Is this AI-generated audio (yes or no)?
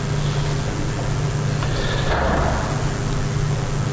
no